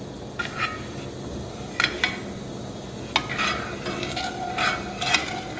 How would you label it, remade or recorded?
recorded